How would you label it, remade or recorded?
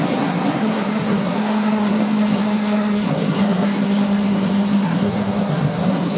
remade